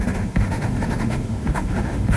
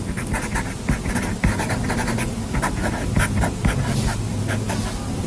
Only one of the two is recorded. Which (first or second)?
second